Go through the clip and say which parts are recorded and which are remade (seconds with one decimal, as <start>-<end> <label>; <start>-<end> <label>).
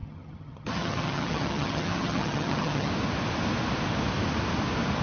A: 0.0-2.9 remade; 2.9-5.0 recorded